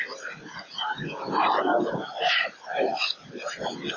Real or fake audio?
real